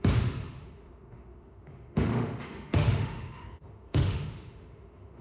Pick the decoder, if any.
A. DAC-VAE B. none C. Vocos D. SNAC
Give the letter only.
A